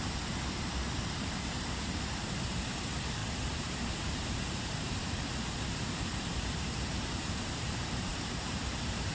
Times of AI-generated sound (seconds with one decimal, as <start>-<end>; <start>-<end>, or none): 0.0-9.1